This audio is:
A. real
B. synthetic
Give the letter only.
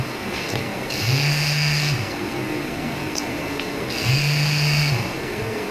B